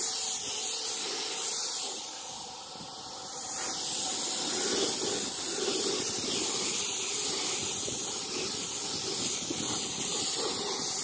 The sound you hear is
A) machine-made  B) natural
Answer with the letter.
B